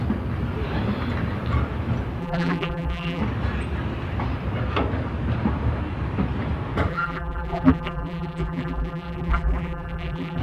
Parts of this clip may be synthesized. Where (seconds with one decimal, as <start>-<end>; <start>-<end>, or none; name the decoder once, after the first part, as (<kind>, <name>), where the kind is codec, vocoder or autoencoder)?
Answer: 2.2-3.2 (vocoder, BigVGAN v2); 6.9-10.4